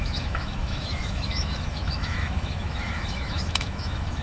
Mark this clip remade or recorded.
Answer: remade